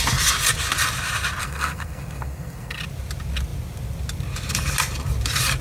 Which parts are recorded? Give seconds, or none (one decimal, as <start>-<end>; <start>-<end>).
0.0-1.4; 2.8-5.6